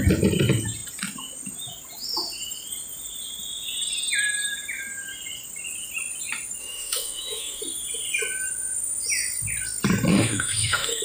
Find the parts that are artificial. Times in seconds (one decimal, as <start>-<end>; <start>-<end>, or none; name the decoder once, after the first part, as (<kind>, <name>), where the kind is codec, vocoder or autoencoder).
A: 6.6-7.6 (autoencoder, DAC-VAE); 10.1-11.0